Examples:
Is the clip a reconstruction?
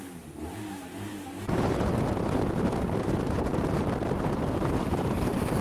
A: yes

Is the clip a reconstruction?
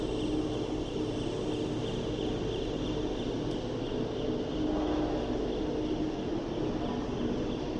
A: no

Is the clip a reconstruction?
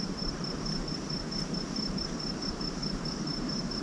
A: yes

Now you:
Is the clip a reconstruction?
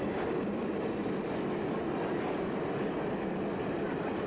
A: yes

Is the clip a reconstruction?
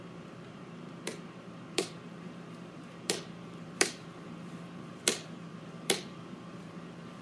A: yes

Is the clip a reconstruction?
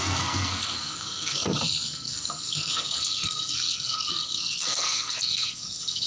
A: yes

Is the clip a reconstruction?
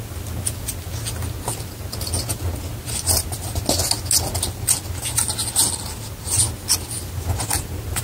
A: no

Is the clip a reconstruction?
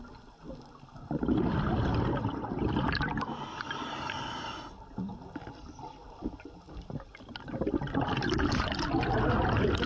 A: no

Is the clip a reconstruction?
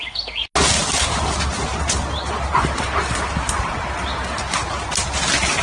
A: no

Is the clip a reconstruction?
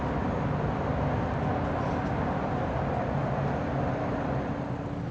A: no